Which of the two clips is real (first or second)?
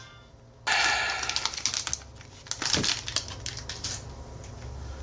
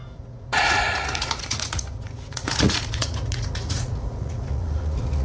first